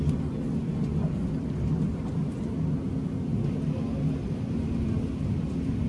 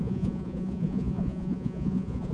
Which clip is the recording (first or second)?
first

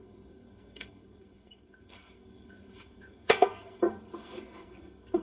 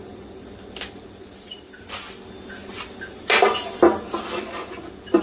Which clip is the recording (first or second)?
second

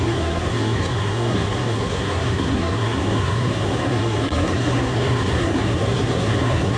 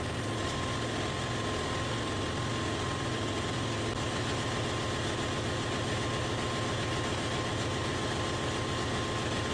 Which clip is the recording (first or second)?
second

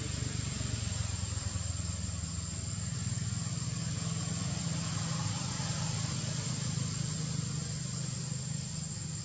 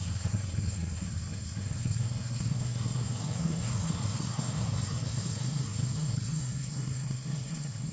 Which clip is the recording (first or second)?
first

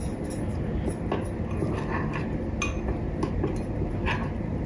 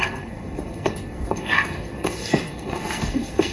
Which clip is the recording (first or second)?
first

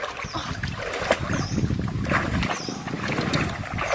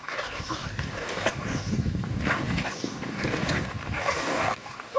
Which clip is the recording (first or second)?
first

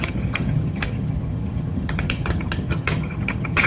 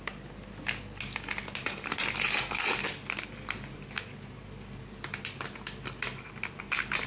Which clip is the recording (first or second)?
second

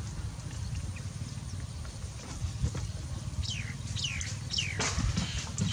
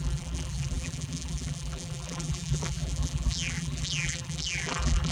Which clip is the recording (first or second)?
first